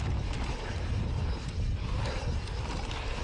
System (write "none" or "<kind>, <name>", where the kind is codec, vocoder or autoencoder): none